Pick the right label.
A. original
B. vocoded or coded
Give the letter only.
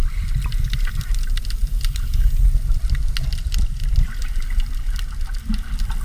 A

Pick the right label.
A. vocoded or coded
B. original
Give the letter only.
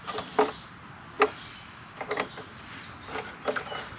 B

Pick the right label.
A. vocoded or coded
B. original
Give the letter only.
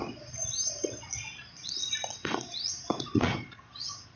A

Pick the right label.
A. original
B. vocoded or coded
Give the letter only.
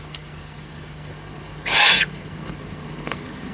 B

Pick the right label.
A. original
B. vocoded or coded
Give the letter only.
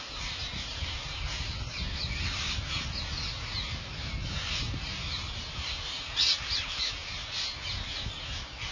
A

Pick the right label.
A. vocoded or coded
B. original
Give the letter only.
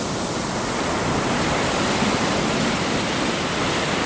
B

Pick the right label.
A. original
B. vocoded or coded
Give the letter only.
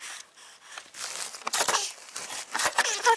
A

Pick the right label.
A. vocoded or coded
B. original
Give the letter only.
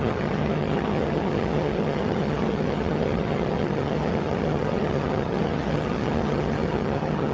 A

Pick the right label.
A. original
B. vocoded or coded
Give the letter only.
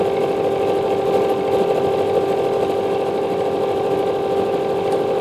A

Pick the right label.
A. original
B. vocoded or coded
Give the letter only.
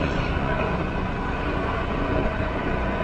B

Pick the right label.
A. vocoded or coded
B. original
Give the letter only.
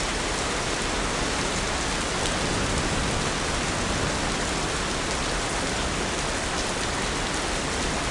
B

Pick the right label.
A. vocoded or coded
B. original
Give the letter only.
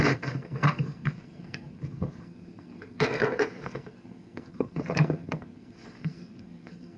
A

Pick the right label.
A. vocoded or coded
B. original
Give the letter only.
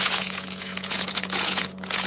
A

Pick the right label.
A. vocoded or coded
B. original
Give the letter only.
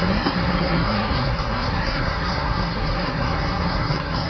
A